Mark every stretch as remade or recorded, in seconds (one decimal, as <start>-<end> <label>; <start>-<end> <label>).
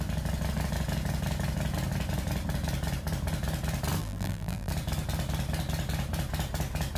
0.0-4.0 recorded; 4.0-4.7 remade; 4.7-7.0 recorded